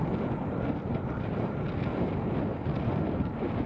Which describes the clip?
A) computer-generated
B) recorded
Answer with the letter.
B